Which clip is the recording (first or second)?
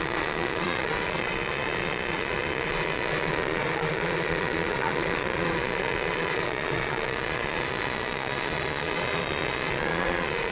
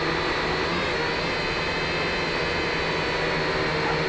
second